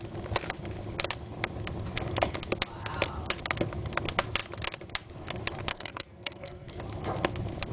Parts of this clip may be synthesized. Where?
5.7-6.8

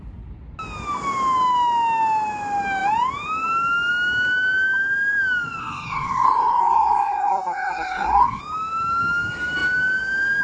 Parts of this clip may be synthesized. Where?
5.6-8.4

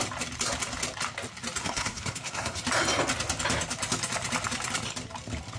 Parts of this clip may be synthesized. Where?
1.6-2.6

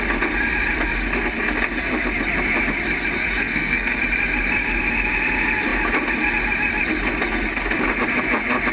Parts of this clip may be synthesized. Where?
3.4-4.0

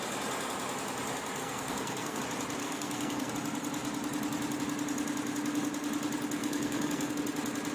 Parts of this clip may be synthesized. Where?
1.4-2.2; 2.6-3.3; 6.4-7.1